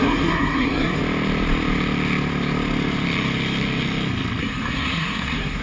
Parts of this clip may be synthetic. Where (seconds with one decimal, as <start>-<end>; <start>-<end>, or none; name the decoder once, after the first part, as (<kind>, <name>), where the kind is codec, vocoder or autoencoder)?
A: 0.0-1.0 (codec, SNAC); 4.4-5.6